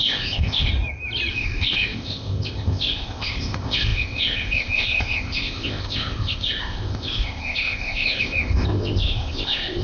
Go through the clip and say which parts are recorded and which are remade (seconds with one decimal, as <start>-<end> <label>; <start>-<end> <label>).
0.0-0.7 remade; 0.7-1.3 recorded; 1.3-9.8 remade